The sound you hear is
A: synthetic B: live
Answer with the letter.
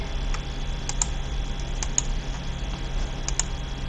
B